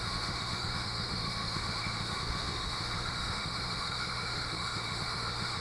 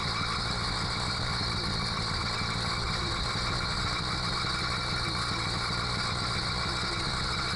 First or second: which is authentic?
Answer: second